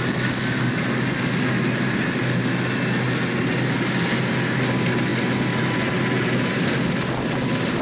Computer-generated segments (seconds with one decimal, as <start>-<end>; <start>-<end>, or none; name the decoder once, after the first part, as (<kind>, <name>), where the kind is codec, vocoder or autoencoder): none